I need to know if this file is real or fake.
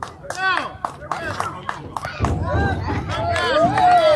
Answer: real